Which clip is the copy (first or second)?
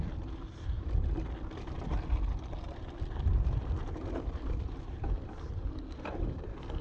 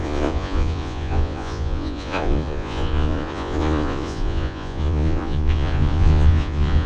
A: second